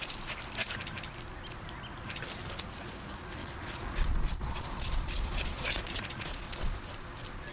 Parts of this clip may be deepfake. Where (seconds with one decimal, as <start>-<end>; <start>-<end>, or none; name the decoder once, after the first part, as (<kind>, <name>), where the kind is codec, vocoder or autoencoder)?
3.4-6.8 (vocoder, Vocos)